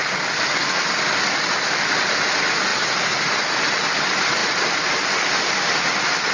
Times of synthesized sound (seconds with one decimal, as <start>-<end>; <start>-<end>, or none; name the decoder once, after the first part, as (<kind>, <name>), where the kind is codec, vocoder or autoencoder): none